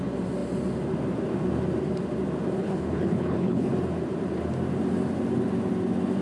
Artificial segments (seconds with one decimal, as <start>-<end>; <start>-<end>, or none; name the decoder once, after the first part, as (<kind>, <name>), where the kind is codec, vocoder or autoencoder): 2.6-3.7 (codec, HILCodec)

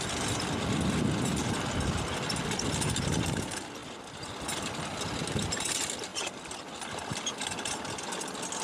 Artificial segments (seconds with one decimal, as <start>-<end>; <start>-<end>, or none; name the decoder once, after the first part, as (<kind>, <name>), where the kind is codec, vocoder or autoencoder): none

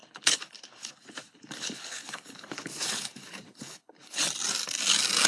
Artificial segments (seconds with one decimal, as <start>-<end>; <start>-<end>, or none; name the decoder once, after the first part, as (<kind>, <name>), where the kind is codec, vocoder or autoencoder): 0.0-0.9 (codec, HILCodec); 1.3-4.2

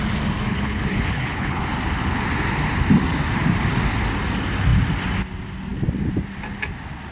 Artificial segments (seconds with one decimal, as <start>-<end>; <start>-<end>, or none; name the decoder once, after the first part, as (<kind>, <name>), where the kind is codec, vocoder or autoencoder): 0.5-1.6 (codec, HILCodec)